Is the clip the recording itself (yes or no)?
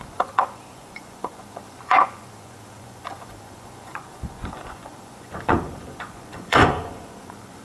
no